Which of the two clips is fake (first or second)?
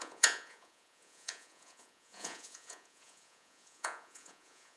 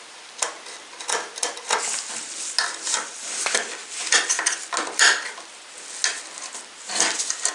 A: first